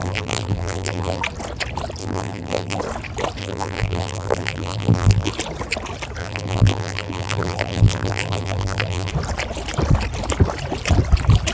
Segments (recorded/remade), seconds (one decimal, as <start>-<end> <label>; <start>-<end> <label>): 0.0-1.2 remade; 1.2-2.0 recorded; 2.0-2.8 remade; 2.8-3.4 recorded; 3.4-5.3 remade; 5.3-6.2 recorded; 6.2-9.1 remade; 9.1-11.5 recorded